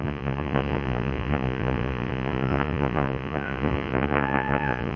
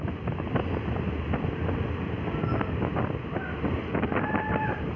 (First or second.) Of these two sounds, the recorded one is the second